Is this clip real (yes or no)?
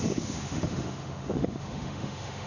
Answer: no